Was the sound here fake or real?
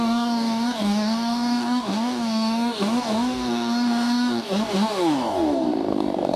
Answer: fake